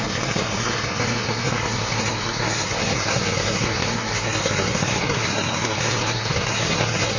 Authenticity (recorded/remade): remade